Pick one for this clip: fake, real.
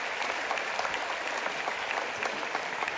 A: real